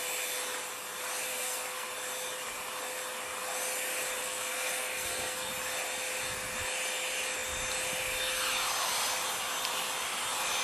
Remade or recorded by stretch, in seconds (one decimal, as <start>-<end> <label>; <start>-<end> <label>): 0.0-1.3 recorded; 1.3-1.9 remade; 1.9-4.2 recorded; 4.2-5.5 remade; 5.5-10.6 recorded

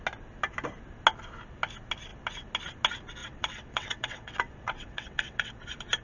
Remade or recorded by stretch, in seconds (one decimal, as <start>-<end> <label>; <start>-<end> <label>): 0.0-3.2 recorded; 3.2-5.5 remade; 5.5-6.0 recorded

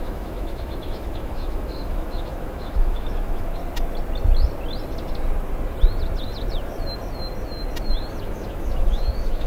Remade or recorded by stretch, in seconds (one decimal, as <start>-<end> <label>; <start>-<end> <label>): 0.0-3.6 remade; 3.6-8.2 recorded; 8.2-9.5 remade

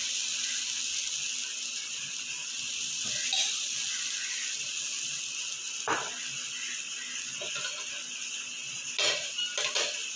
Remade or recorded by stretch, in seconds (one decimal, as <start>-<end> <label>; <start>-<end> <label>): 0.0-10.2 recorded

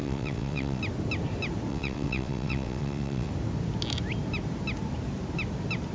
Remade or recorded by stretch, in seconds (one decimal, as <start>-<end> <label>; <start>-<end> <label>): 0.0-0.8 remade; 0.8-1.7 recorded; 1.7-3.3 remade; 3.3-5.9 recorded

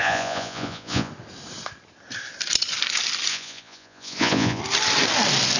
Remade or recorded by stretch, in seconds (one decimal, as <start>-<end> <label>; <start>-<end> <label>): 0.0-1.1 remade; 1.1-3.3 recorded; 3.3-4.6 remade; 4.6-5.6 recorded

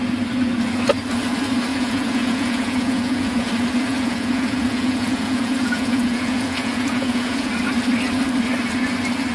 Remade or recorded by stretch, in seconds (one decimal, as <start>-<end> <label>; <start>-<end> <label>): 0.0-1.7 recorded; 1.7-3.5 remade; 3.5-3.9 recorded; 3.9-7.5 remade; 7.5-9.3 recorded

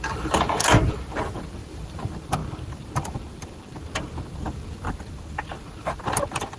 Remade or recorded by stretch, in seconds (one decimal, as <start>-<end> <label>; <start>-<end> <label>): 0.0-0.6 remade; 0.6-1.2 recorded; 1.2-6.6 remade